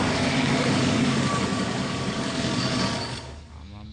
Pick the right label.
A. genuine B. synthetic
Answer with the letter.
B